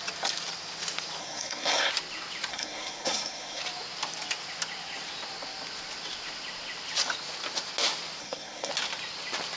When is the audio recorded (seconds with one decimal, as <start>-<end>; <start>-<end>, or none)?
0.0-1.2; 1.9-2.5; 3.6-8.2; 8.7-9.6